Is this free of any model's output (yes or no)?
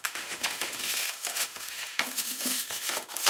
no